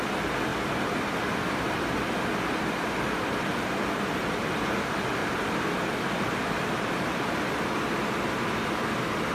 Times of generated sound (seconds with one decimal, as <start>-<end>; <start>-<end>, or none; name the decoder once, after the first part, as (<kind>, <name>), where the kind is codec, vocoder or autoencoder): 5.2-7.6 (vocoder, BigVGAN v2)